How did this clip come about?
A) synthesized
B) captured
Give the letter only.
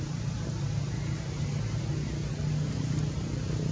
B